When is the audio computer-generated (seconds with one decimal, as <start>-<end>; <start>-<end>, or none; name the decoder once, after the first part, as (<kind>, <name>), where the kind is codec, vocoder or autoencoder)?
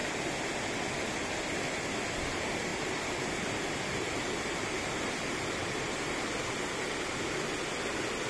2.7-6.0 (vocoder, BigVGAN v2)